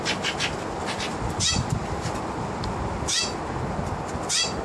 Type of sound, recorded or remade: recorded